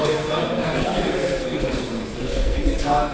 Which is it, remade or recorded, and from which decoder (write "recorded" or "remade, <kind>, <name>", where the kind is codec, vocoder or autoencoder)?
remade, codec, SNAC